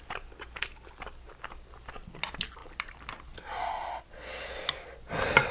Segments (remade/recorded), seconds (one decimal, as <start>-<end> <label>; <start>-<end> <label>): 0.0-5.5 recorded